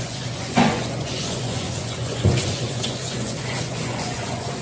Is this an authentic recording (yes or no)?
no